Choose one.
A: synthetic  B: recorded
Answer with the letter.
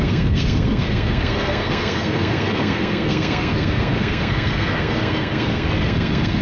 A